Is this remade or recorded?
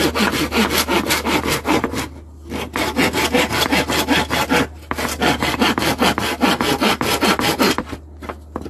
recorded